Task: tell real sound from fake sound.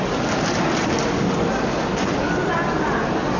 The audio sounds real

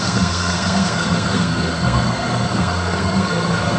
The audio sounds fake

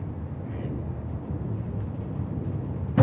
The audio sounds real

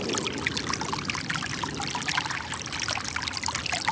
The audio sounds real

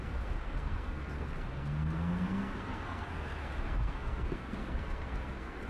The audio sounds fake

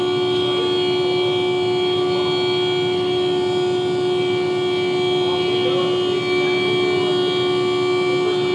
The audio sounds real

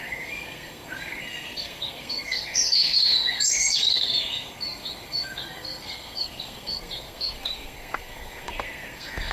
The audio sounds fake